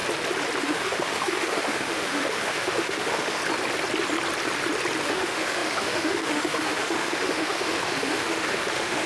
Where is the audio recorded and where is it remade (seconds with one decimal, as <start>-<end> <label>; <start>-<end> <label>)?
0.0-0.6 recorded; 0.6-3.4 remade; 3.4-5.0 recorded; 5.0-9.1 remade